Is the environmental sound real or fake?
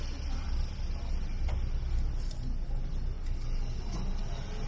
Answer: real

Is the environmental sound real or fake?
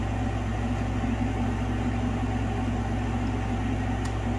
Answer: real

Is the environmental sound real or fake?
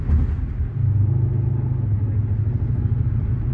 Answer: real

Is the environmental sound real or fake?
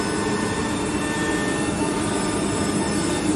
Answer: real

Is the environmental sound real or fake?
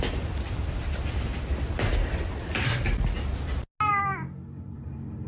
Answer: real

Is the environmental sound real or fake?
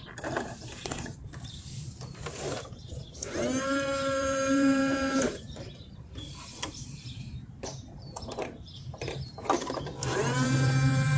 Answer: fake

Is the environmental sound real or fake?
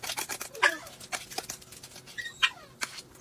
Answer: real